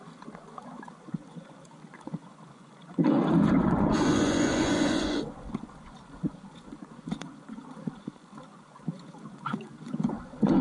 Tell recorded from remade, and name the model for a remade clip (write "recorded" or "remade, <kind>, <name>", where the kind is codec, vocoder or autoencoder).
remade, vocoder, Vocos